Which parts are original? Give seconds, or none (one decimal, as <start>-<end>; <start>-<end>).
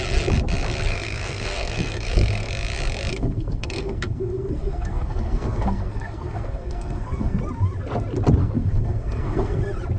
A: 0.0-0.9; 2.5-3.1; 7.4-8.4; 9.6-10.0